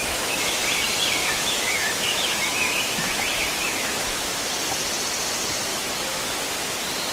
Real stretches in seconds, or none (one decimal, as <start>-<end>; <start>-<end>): 0.6-1.2; 4.5-5.7; 6.4-7.1